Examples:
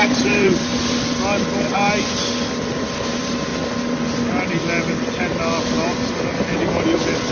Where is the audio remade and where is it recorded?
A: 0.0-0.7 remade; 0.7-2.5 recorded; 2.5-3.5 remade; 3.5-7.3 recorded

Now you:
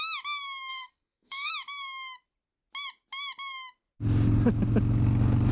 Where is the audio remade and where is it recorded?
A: 0.0-0.7 recorded; 0.7-1.5 remade; 1.5-5.5 recorded